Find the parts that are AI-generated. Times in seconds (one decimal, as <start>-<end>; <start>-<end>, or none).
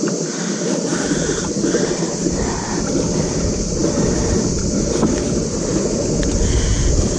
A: 0.9-2.6